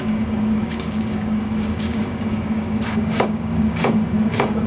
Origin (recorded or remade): remade